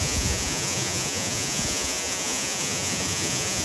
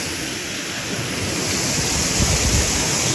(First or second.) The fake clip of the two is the first